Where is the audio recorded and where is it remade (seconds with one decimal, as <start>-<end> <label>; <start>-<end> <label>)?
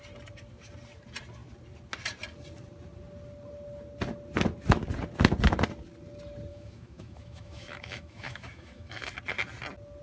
0.0-6.5 recorded; 6.5-9.1 remade; 9.1-10.0 recorded